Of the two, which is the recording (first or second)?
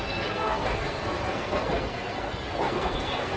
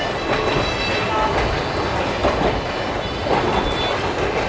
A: second